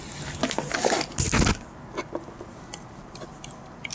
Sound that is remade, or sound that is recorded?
recorded